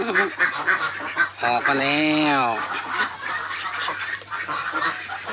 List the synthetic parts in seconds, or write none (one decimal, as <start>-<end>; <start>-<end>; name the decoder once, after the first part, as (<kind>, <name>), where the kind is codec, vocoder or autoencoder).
1.3-4.1 (vocoder, BigVGAN v2)